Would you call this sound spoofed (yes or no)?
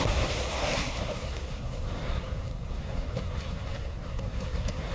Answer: yes